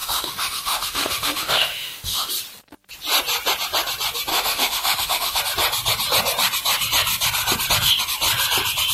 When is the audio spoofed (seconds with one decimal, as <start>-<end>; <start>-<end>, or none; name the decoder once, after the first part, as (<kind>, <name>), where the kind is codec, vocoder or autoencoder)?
0.0-2.3 (autoencoder, DAC-VAE); 4.3-5.4